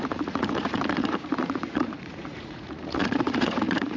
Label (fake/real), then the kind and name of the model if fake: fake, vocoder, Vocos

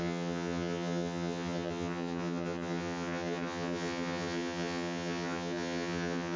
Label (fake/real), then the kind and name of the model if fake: fake, vocoder, HiFi-GAN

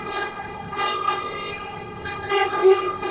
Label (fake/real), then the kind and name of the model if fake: fake, codec, ZipCodec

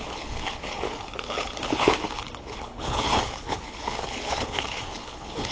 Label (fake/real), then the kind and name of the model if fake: fake, codec, HILCodec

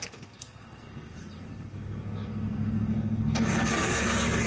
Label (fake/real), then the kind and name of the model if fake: fake, codec, SNAC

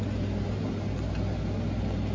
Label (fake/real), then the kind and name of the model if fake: real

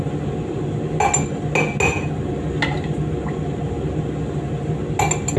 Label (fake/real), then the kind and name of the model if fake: real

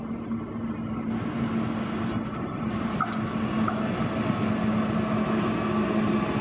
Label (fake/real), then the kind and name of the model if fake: real